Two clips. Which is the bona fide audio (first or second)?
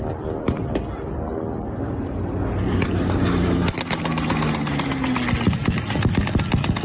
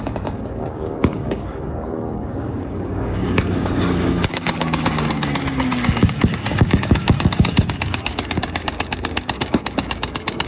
first